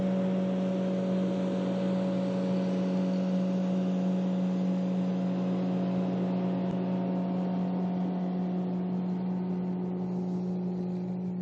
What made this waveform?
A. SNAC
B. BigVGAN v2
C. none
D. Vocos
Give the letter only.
C